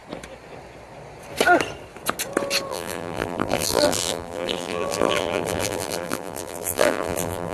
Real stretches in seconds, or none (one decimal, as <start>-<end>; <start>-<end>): 0.0-2.7